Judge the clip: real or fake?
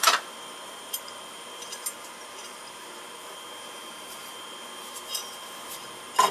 fake